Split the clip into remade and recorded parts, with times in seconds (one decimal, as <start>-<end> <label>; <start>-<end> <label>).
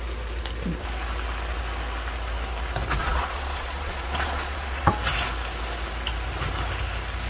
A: 0.0-3.0 recorded; 3.0-4.9 remade; 4.9-7.3 recorded